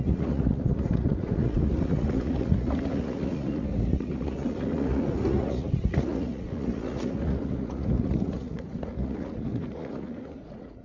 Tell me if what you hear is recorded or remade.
remade